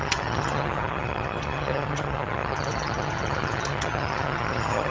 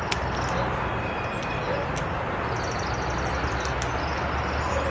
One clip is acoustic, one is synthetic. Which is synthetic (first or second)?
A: first